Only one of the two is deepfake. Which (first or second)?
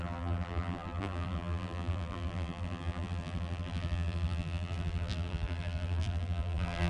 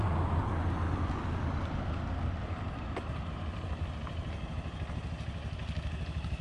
first